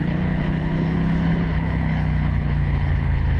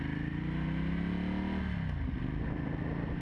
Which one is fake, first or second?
first